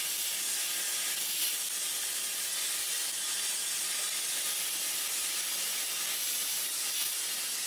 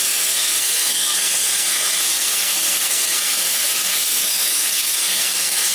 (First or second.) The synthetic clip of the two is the second